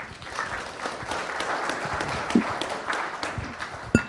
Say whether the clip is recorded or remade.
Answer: recorded